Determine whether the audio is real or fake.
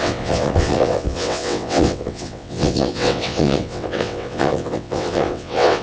fake